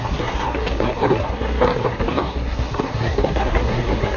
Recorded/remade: remade